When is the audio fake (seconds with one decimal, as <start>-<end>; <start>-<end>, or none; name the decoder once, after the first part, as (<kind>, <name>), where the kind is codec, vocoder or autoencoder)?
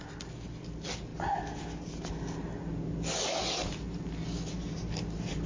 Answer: none